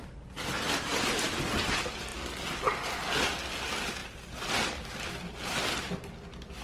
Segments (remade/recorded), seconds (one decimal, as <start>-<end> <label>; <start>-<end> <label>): 0.0-6.6 recorded